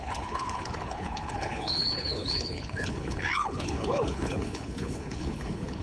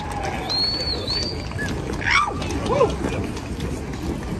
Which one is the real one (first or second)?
second